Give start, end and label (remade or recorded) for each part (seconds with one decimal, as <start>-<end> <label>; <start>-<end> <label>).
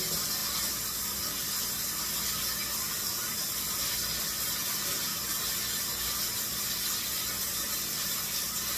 0.0-8.8 recorded